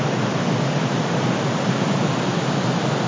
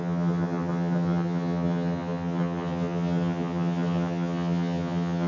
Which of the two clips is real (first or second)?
first